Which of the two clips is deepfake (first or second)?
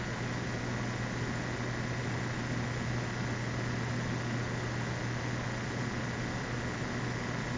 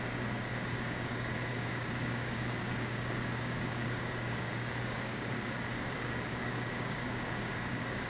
second